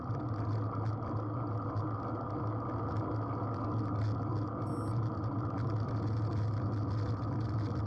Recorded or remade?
recorded